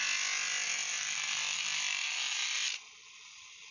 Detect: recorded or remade recorded